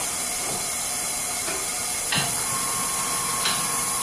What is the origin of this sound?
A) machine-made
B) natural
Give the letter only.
B